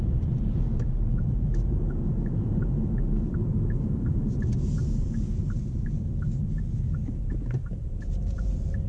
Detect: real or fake fake